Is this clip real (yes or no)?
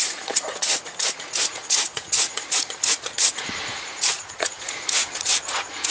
no